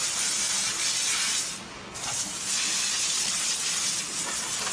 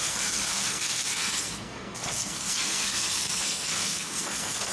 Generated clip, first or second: second